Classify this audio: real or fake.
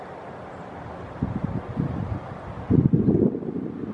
real